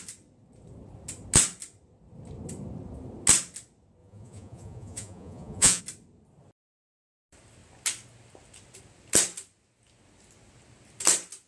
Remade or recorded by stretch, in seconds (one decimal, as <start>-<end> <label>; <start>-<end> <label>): 0.0-4.0 recorded; 4.0-5.8 remade; 5.8-11.5 recorded

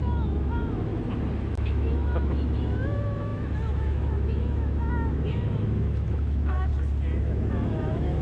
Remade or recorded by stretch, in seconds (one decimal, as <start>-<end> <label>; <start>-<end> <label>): 0.0-0.9 remade; 0.9-1.5 recorded; 1.5-6.7 remade; 6.7-7.2 recorded; 7.2-8.2 remade

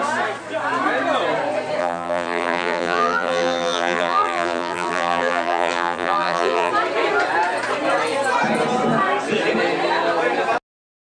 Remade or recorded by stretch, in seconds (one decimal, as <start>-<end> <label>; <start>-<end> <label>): 0.0-1.8 recorded; 1.8-6.7 remade; 6.7-11.1 recorded

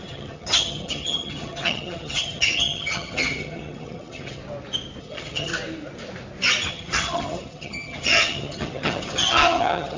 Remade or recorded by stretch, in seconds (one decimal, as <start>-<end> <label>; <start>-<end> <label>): 0.0-4.4 remade; 4.4-5.0 recorded; 5.0-5.5 remade; 5.5-6.7 recorded; 6.7-10.0 remade